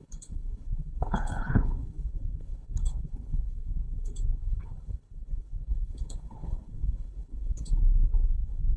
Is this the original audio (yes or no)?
no